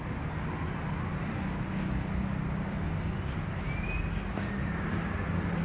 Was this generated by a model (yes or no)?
no